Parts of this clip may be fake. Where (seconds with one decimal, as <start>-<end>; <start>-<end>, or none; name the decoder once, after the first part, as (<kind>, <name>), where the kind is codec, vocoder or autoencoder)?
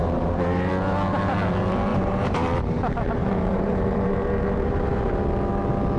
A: 0.0-0.7 (vocoder, BigVGAN v2); 1.9-5.1